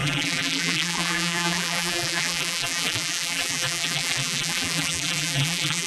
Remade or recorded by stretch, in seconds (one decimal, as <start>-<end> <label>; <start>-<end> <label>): 0.0-5.9 remade